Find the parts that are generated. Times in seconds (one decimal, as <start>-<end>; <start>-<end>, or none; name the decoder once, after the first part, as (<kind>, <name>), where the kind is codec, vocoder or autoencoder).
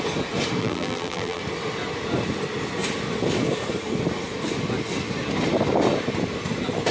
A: 0.6-1.4 (vocoder, BigVGAN v2)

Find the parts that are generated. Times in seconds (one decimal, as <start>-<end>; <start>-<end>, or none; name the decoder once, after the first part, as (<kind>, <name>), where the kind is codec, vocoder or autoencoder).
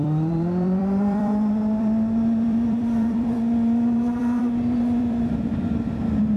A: 0.0-6.4 (vocoder, BigVGAN v2)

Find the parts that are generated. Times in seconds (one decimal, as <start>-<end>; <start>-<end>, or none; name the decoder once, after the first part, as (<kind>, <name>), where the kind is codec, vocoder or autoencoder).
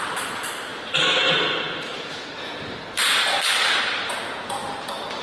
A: 0.0-4.6 (vocoder, BigVGAN v2)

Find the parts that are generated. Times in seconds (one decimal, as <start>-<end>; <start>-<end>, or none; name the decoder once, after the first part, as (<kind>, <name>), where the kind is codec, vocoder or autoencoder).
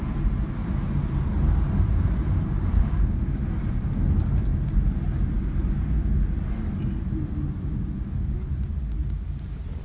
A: 0.6-2.8 (vocoder, BigVGAN v2)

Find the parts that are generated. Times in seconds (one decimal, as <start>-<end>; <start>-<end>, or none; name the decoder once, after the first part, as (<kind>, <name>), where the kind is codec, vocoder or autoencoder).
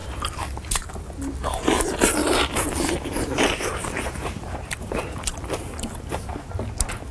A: 0.0-1.0 (vocoder, BigVGAN v2); 2.2-6.5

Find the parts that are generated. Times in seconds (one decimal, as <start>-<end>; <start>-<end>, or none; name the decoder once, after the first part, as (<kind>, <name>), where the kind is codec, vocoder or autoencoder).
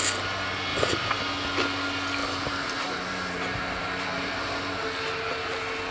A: 0.7-1.2 (vocoder, BigVGAN v2); 2.2-4.7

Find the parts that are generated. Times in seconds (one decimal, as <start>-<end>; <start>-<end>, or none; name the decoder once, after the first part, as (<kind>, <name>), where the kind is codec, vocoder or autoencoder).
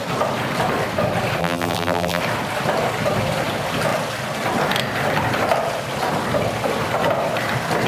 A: 1.4-2.2 (vocoder, BigVGAN v2)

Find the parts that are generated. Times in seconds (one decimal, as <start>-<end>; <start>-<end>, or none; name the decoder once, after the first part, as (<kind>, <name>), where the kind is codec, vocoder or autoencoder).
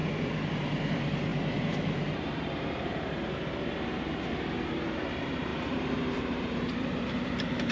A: 0.0-7.7 (vocoder, BigVGAN v2)